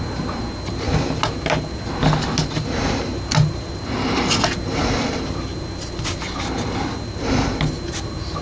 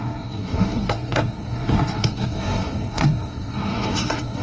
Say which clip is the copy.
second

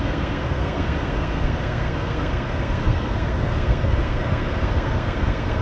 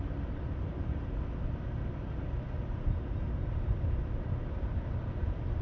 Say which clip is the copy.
first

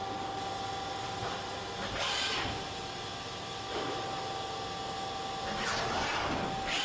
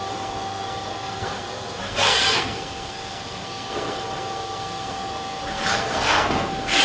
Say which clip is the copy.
second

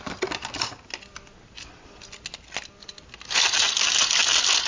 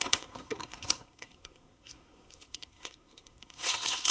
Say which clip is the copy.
second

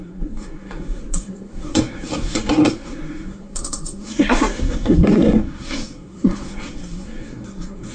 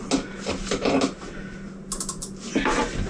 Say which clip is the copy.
first